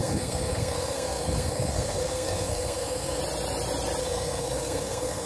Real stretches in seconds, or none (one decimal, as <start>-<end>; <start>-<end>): 3.2-4.0